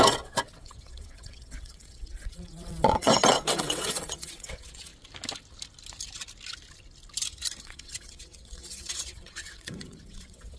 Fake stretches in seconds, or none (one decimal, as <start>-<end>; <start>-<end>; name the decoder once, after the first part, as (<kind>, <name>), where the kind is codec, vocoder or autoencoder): 0.0-4.9 (vocoder, WaveNeXt); 7.6-10.6